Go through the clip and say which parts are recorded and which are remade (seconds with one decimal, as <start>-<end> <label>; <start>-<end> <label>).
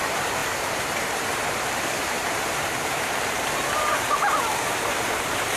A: 0.0-5.6 remade